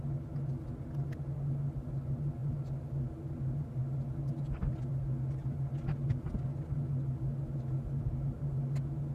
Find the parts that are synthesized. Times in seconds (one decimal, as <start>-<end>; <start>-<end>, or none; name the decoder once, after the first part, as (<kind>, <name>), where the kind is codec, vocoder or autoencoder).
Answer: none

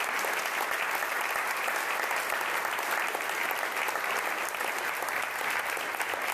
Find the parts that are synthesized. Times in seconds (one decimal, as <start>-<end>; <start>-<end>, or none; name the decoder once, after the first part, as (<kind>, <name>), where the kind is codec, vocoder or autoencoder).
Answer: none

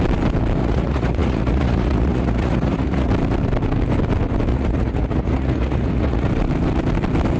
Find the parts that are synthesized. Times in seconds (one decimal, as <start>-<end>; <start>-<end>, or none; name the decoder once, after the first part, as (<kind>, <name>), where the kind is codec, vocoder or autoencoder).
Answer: 0.6-3.1 (vocoder, Vocos); 4.5-6.3